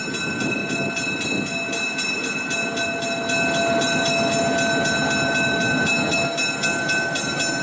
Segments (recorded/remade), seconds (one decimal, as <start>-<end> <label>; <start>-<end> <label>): 0.0-7.6 recorded